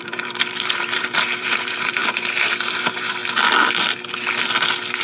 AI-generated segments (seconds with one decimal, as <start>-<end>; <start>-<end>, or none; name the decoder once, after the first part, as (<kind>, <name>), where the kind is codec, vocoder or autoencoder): 0.0-3.2 (vocoder, BigVGAN v2)